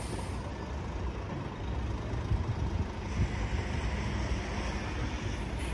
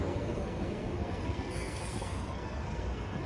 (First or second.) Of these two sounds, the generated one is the second